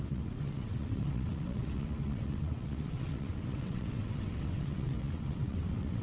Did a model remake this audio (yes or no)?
yes